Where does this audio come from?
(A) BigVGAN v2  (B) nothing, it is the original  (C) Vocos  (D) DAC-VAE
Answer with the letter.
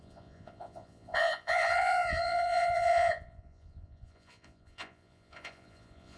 C